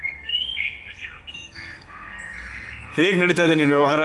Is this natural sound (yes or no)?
no